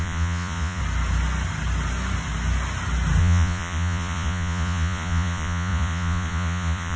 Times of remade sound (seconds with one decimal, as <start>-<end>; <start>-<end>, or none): 0.0-0.8; 3.2-7.0